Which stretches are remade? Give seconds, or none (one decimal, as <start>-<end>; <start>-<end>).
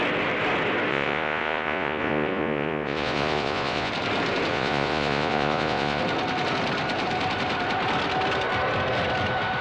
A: 0.9-3.9; 4.5-6.0